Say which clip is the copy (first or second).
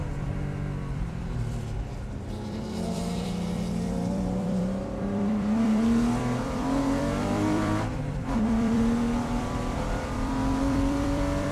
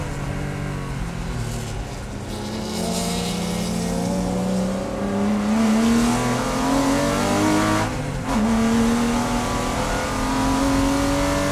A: first